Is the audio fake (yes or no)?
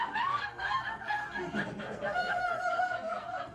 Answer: yes